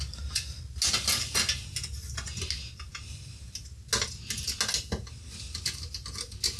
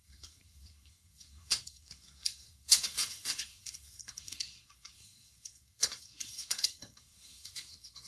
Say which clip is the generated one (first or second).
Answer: second